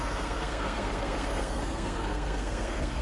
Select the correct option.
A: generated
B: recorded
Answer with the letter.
A